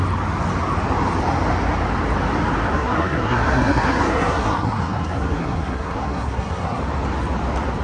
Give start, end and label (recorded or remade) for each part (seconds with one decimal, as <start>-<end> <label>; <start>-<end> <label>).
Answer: 0.0-2.7 recorded; 2.7-6.8 remade; 6.8-7.8 recorded

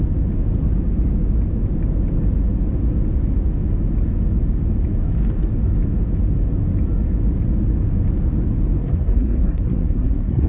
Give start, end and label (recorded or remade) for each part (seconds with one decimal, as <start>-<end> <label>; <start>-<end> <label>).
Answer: 0.0-8.8 recorded; 8.8-10.5 remade

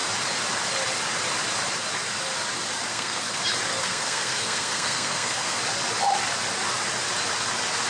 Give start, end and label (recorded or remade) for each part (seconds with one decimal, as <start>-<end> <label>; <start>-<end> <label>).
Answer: 0.0-2.9 recorded; 2.9-3.4 remade; 3.4-3.8 recorded; 3.8-5.6 remade; 5.6-7.9 recorded

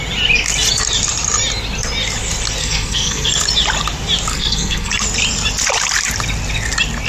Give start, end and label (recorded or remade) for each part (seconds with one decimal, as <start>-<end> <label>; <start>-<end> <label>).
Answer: 0.0-2.6 recorded; 2.6-3.3 remade; 3.3-4.3 recorded; 4.3-4.9 remade; 4.9-7.1 recorded

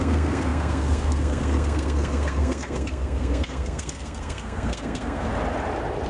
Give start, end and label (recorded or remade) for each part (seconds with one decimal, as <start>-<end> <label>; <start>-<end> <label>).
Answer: 0.0-5.3 remade; 5.3-6.1 recorded

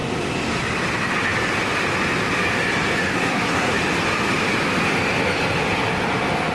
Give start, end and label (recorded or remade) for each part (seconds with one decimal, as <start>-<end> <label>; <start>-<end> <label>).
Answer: 0.0-3.1 recorded; 3.1-3.7 remade; 3.7-6.5 recorded

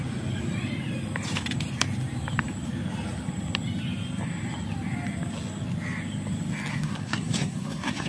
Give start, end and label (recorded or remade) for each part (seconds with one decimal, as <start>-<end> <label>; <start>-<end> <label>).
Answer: 0.0-6.7 recorded; 6.7-8.1 remade